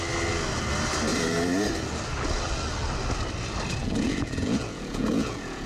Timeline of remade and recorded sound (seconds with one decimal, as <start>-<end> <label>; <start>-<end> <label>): 0.0-3.8 recorded; 3.8-5.7 remade